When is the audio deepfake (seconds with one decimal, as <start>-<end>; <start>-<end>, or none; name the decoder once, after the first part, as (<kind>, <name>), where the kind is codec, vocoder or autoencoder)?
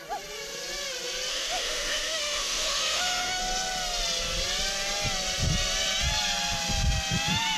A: 1.3-3.4 (autoencoder, DAC-VAE)